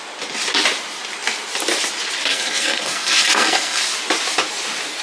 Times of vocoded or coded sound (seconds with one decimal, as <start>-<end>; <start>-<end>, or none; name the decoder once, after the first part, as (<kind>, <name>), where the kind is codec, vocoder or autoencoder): 2.3-3.8 (codec, SNAC)